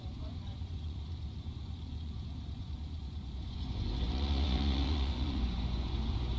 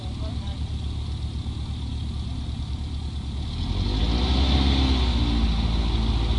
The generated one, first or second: first